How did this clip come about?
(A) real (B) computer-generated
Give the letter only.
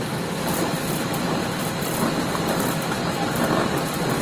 A